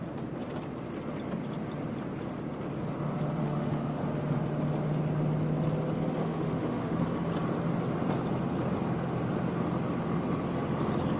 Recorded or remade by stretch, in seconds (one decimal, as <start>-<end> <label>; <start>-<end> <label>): 0.0-3.4 recorded; 3.4-4.0 remade; 4.0-6.2 recorded; 6.2-7.0 remade; 7.0-11.2 recorded

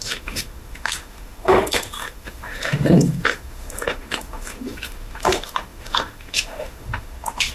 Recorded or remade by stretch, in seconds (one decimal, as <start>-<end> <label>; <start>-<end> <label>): 0.0-7.5 remade

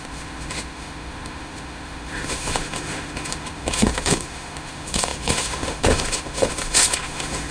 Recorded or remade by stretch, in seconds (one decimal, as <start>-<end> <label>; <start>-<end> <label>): 0.0-7.5 remade

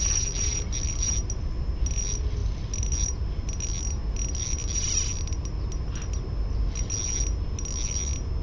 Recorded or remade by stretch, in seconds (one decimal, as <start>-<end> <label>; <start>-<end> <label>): 0.0-8.4 recorded

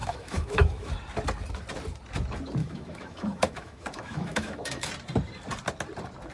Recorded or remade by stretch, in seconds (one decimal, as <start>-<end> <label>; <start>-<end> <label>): 0.0-0.9 remade; 0.9-2.6 recorded; 2.6-4.9 remade; 4.9-6.3 recorded

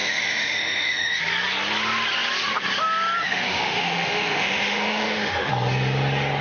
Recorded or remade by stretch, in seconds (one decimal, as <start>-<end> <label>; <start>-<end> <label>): 0.0-1.2 remade; 1.2-3.2 recorded; 3.2-5.5 remade; 5.5-6.4 recorded

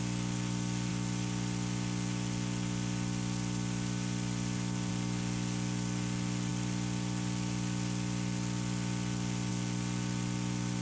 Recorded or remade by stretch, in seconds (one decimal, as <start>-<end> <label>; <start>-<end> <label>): 0.0-10.8 recorded

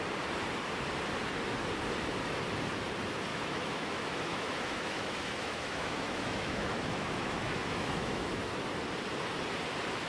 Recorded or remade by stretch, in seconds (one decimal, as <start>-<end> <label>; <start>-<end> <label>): 0.0-3.3 recorded; 3.3-8.4 remade; 8.4-10.1 recorded